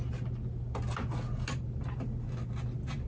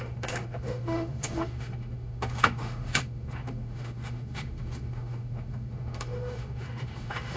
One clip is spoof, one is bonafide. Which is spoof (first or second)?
second